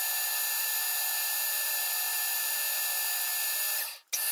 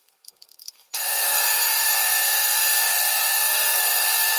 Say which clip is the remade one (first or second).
second